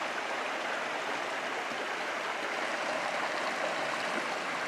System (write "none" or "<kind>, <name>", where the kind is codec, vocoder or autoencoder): none